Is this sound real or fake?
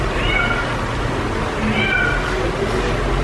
real